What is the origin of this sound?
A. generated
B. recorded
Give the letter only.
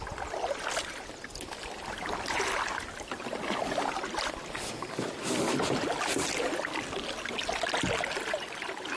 B